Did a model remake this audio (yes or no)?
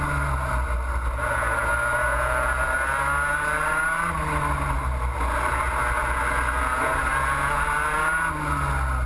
no